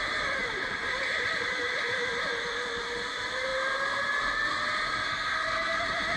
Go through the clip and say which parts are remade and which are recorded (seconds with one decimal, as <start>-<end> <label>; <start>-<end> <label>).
0.0-5.1 recorded; 5.1-5.8 remade; 5.8-6.2 recorded